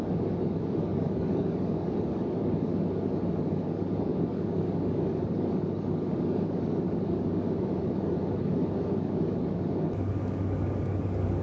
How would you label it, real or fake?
fake